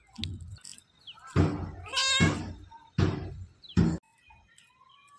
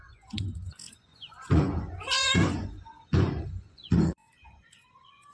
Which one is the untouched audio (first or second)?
first